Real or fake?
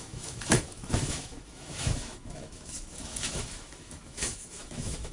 fake